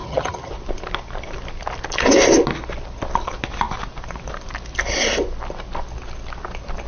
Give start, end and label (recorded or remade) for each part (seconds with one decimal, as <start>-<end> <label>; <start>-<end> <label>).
0.0-0.5 remade; 0.5-6.9 recorded

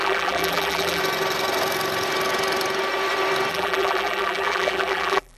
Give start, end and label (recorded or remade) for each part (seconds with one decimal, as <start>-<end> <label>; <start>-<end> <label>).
0.0-1.0 remade; 1.0-3.5 recorded; 3.5-5.4 remade

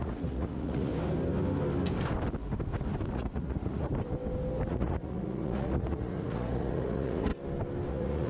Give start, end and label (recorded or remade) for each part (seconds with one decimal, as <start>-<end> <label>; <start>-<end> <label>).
0.0-0.9 remade; 0.9-3.1 recorded; 3.1-3.9 remade; 3.9-4.7 recorded; 4.7-7.3 remade; 7.3-7.9 recorded; 7.9-8.3 remade

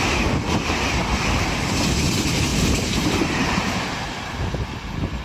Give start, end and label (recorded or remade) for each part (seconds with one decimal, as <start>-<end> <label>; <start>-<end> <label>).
0.0-2.5 recorded; 2.5-3.8 remade; 3.8-5.2 recorded

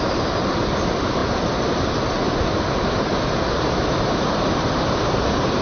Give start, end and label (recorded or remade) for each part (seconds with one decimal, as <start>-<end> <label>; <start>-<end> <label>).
0.0-3.1 remade; 3.1-3.8 recorded; 3.8-5.6 remade

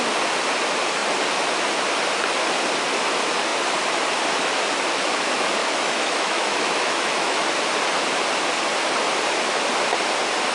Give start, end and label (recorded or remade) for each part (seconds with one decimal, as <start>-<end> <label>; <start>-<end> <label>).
0.0-5.6 recorded; 5.6-7.4 remade; 7.4-10.5 recorded

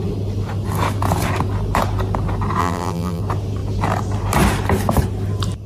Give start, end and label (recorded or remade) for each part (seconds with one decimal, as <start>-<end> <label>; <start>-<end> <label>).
0.0-2.6 recorded; 2.6-3.2 remade; 3.2-5.7 recorded